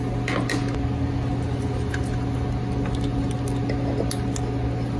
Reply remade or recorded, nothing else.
recorded